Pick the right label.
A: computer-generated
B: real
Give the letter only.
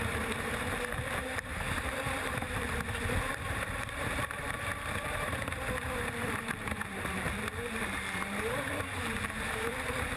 A